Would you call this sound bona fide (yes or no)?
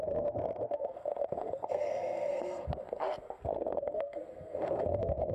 no